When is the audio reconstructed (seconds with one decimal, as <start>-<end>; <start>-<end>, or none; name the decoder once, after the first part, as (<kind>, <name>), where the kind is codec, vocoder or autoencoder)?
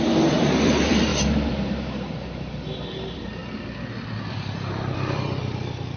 0.0-3.4 (vocoder, BigVGAN v2); 4.3-6.0